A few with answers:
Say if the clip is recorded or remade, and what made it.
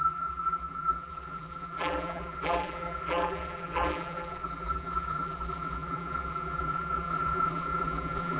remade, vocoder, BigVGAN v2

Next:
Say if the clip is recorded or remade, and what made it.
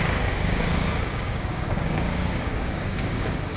remade, codec, DAC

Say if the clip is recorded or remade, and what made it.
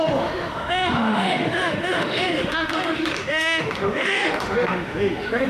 remade, autoencoder, DAC-VAE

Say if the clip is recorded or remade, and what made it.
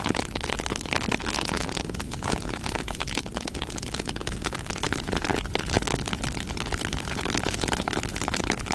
remade, codec, HILCodec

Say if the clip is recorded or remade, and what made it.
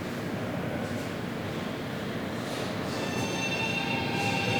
recorded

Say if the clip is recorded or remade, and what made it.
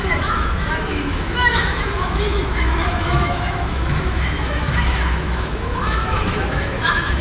remade, autoencoder, DAC-VAE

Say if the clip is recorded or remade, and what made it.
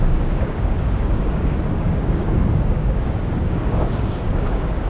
remade, codec, DAC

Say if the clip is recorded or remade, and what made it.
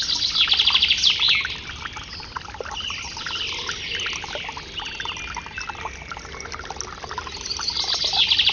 recorded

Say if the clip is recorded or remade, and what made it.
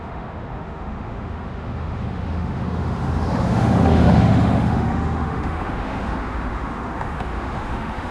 remade, autoencoder, DAC-VAE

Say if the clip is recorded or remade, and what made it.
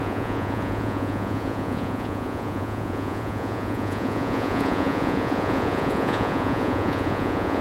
remade, vocoder, Vocos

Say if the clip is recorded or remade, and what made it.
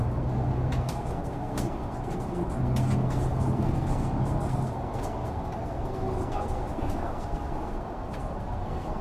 remade, codec, SNAC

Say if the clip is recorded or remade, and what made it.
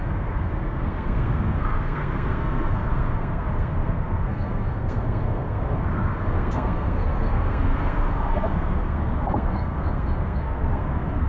remade, codec, SNAC